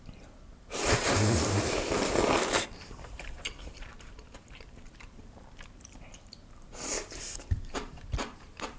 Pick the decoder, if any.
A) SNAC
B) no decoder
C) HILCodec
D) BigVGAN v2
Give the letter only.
D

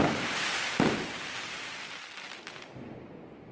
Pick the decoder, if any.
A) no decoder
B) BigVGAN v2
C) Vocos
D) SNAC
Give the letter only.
A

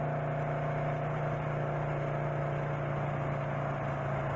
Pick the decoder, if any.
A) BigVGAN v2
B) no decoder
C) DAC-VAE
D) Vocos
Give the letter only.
B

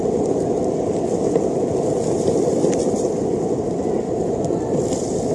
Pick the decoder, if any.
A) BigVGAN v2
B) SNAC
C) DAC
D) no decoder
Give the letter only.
A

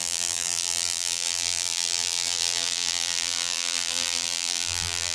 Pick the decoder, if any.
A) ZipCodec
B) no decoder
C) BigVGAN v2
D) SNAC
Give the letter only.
C